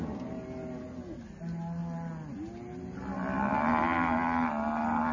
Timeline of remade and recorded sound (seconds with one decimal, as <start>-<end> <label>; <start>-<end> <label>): 0.0-5.1 recorded